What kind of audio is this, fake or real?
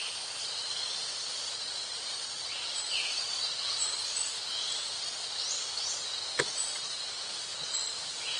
real